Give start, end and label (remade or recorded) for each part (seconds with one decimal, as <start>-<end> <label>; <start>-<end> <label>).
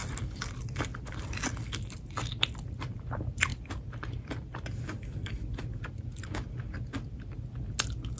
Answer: 0.0-8.2 recorded